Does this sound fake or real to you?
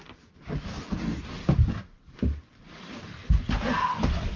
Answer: real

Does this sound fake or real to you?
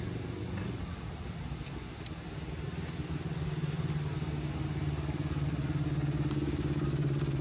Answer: real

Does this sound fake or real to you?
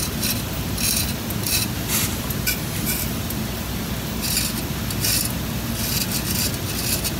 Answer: real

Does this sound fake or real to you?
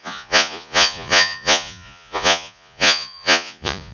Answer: fake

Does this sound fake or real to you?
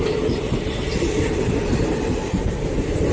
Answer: real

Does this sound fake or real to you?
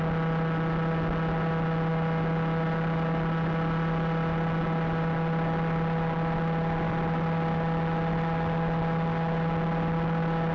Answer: real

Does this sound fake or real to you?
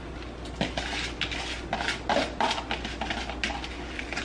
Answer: real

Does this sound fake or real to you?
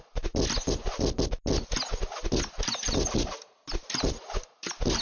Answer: real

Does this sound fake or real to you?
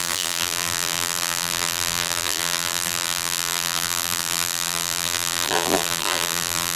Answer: fake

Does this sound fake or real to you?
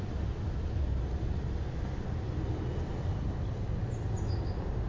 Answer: real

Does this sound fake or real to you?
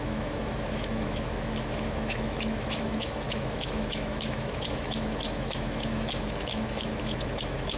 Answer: fake